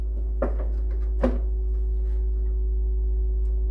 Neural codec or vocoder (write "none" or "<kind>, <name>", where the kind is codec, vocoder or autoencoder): none